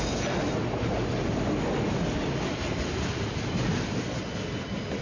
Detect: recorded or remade recorded